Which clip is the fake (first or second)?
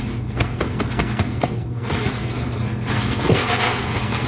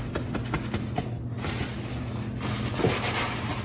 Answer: first